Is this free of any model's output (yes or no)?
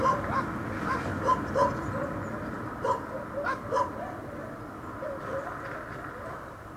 yes